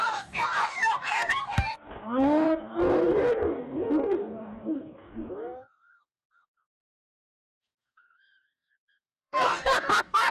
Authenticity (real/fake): fake